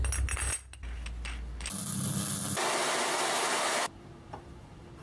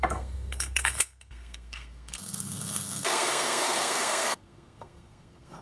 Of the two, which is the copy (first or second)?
second